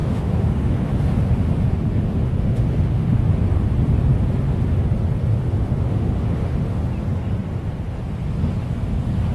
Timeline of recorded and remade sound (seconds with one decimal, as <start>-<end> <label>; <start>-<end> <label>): 0.0-3.2 remade; 3.2-5.3 recorded; 5.3-6.8 remade; 6.8-9.3 recorded